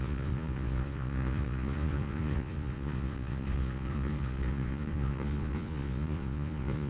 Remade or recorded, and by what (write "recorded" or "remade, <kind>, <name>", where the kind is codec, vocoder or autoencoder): remade, vocoder, Vocos